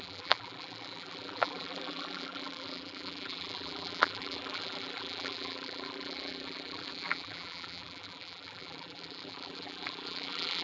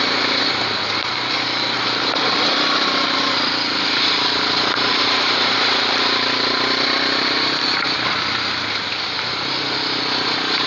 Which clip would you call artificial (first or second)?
first